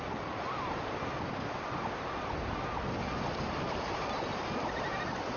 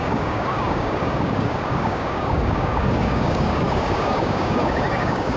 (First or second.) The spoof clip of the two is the second